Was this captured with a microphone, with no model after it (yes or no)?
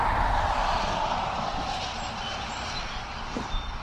yes